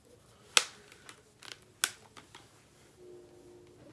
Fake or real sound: real